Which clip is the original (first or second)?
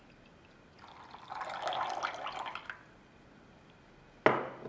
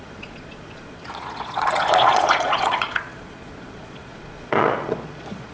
first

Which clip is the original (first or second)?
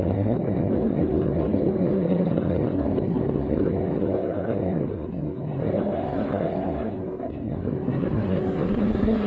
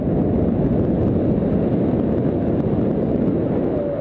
second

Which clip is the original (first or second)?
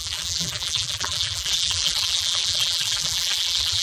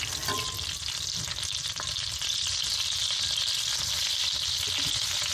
second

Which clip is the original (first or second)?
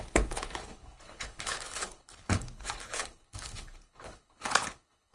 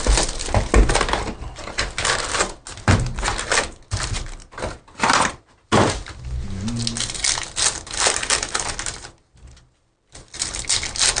second